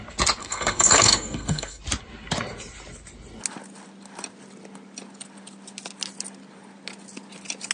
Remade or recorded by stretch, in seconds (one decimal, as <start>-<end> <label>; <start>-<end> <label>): 0.0-0.4 recorded; 0.4-1.8 remade; 1.8-7.7 recorded